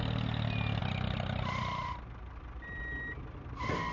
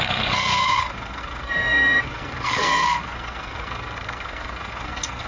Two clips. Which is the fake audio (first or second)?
second